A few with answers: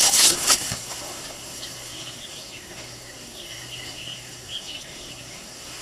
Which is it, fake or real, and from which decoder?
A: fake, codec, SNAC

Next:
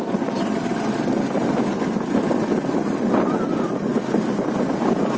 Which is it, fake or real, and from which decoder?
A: real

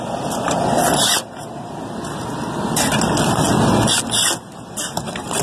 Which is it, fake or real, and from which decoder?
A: real